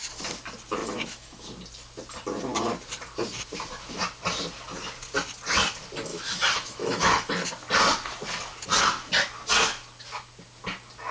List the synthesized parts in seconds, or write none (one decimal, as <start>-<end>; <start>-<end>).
0.8-1.5; 6.1-7.3